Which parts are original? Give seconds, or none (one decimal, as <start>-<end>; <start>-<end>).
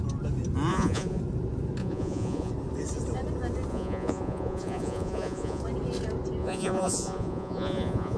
0.0-0.7; 1.2-1.8; 2.5-3.7; 5.6-6.4